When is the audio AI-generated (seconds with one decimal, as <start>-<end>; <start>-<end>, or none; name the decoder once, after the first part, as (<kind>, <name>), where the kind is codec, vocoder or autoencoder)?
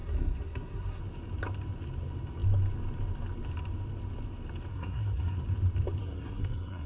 0.0-1.0 (codec, SNAC); 4.7-5.4; 6.0-6.9